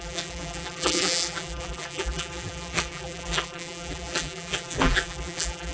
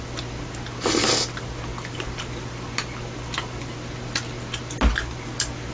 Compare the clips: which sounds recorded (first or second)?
second